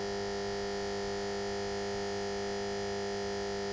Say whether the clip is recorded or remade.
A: recorded